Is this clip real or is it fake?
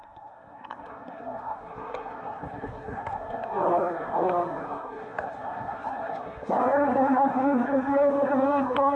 fake